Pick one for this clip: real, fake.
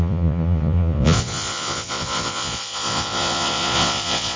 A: fake